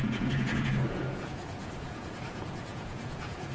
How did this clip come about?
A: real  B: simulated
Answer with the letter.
B